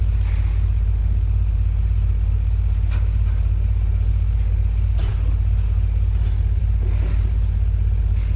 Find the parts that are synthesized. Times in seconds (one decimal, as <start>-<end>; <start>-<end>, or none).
none